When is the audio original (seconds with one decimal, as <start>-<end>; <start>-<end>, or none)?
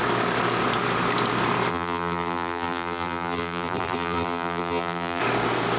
0.0-1.7; 5.2-5.8